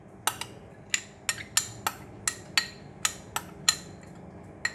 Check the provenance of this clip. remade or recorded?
recorded